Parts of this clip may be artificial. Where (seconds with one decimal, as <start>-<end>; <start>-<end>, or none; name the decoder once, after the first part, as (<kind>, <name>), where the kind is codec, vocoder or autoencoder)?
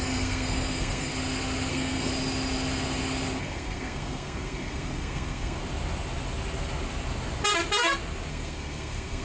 0.0-1.1 (codec, SNAC); 1.7-2.1; 3.4-5.6; 8.3-9.2